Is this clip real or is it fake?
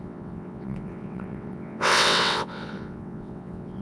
fake